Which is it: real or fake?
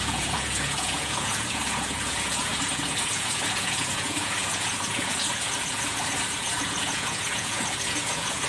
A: fake